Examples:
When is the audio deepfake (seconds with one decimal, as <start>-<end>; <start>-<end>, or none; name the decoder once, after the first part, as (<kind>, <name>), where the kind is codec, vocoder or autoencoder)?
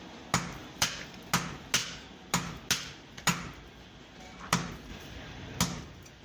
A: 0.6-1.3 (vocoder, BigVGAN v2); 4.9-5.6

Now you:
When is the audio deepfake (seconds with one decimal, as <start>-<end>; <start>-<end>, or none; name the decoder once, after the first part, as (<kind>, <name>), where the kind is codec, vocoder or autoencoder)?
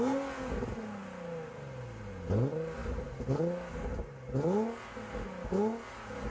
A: none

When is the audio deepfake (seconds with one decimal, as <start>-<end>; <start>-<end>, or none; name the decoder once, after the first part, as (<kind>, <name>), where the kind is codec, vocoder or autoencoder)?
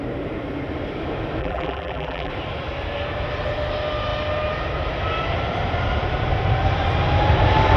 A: 1.4-2.3 (vocoder, BigVGAN v2)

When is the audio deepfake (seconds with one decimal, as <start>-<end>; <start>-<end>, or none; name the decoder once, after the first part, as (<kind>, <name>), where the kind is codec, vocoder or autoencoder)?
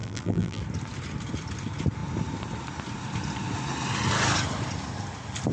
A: 0.0-0.6 (vocoder, BigVGAN v2)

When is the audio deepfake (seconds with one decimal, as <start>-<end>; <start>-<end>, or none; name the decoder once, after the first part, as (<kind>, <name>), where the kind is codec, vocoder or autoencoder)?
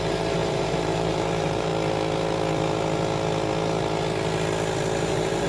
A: 0.0-1.7 (vocoder, BigVGAN v2); 5.0-5.5